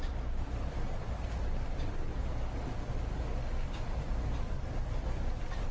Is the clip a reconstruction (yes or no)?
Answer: no